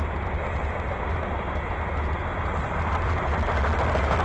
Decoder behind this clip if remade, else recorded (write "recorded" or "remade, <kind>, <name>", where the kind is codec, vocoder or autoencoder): recorded